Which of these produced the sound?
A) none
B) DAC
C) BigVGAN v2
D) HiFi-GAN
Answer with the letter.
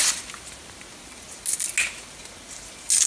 A